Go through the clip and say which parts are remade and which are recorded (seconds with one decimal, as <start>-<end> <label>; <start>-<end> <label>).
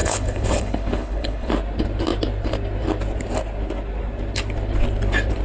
0.0-1.5 remade; 1.5-5.4 recorded